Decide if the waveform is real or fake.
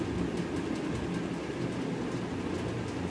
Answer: real